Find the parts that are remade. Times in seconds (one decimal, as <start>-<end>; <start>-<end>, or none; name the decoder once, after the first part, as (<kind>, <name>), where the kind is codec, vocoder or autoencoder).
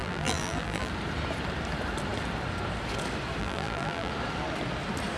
0.0-0.9 (vocoder, BigVGAN v2); 3.4-4.1